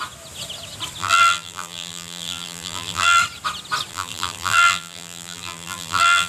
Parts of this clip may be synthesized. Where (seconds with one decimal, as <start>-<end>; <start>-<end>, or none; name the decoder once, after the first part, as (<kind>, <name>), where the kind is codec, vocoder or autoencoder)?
1.0-3.2 (vocoder, BigVGAN v2); 3.9-6.3